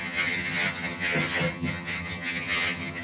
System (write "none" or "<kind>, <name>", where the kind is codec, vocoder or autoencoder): vocoder, HiFi-GAN